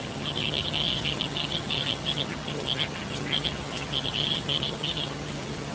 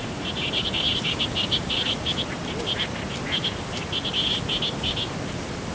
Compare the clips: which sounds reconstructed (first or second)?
first